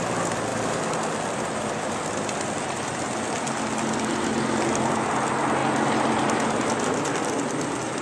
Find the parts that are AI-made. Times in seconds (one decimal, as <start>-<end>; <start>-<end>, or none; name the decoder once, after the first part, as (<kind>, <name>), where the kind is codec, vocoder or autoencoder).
none